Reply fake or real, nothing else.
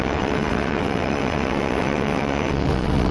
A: fake